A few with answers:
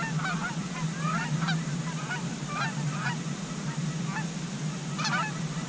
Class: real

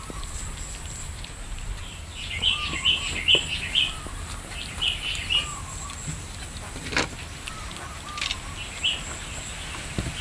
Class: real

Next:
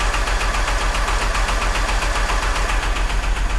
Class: real